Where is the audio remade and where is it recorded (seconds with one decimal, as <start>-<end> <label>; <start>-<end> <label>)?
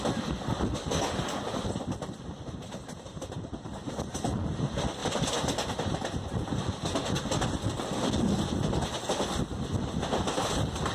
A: 0.0-2.8 recorded; 2.8-4.3 remade; 4.3-10.9 recorded